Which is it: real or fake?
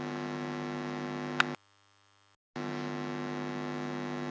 real